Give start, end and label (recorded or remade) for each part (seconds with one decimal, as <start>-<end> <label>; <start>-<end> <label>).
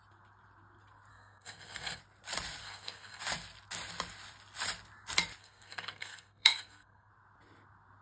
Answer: 0.0-1.1 recorded; 1.1-2.0 remade; 2.0-2.6 recorded; 2.6-3.2 remade; 3.2-5.4 recorded; 5.4-7.1 remade; 7.1-8.0 recorded